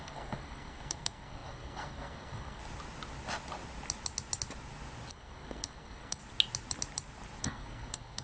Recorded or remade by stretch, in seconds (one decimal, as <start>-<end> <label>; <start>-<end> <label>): 0.0-2.6 remade; 2.6-5.1 recorded; 5.1-6.2 remade; 6.2-7.4 recorded; 7.4-8.2 remade

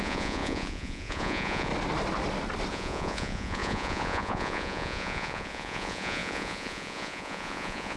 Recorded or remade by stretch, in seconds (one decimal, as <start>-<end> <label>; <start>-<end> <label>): 0.0-1.7 remade; 1.7-2.7 recorded; 2.7-8.0 remade

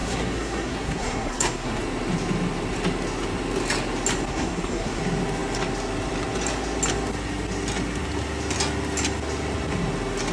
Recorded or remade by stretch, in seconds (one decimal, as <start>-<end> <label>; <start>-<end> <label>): 0.0-1.8 remade; 1.8-4.3 recorded; 4.3-5.0 remade; 5.0-10.3 recorded

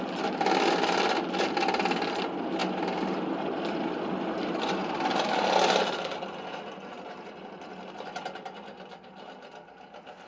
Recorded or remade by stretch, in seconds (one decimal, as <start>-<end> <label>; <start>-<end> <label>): 0.0-10.3 recorded

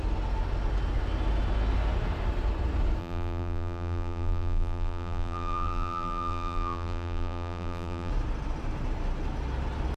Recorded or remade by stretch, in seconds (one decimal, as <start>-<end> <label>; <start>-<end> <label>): 0.0-3.0 recorded; 3.0-8.1 remade; 8.1-10.0 recorded

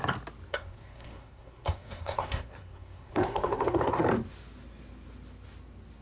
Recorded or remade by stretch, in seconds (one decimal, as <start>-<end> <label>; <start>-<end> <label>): 0.0-0.5 recorded; 0.5-4.1 remade; 4.1-6.0 recorded